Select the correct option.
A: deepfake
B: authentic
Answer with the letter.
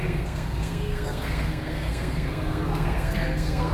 A